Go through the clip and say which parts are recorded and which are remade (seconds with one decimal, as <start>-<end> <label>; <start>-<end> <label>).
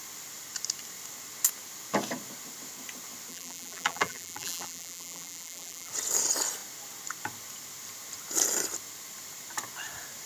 0.0-3.3 recorded; 3.3-5.9 remade; 5.9-10.3 recorded